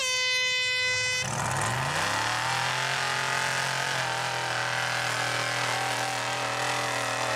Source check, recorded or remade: recorded